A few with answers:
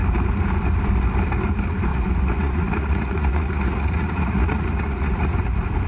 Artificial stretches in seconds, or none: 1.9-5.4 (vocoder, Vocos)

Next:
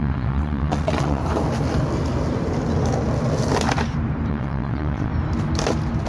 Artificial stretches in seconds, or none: 0.0-1.2 (vocoder, WaveNeXt); 4.3-5.1

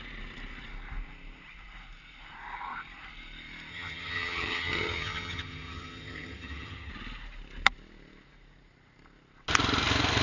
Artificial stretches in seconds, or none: 3.7-6.9 (vocoder, HiFi-GAN)

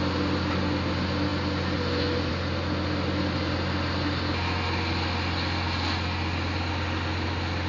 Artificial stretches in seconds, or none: none

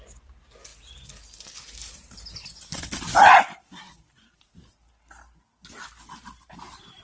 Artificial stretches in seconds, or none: none

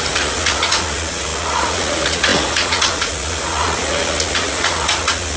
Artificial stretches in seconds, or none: 0.0-5.4 (vocoder, Vocos)